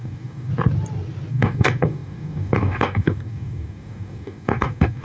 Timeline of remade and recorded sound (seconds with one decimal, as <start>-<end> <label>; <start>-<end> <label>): 0.0-0.5 remade; 0.5-1.3 recorded; 1.3-5.0 remade